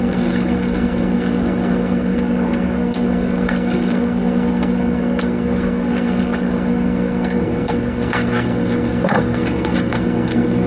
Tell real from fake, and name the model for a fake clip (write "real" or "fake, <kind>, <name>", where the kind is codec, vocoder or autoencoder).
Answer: fake, codec, SNAC